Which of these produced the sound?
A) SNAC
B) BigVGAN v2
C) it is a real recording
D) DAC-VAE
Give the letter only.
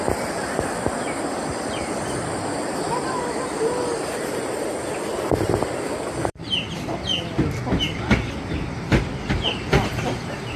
B